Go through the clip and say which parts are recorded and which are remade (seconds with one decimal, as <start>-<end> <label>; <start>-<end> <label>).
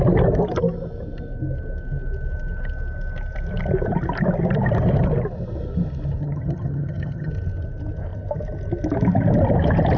0.0-6.2 recorded; 6.2-7.3 remade; 7.3-10.0 recorded